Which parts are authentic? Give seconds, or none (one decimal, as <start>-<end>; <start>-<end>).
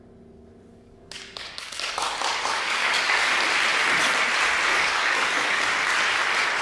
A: 0.0-0.7; 3.3-4.7; 5.6-6.6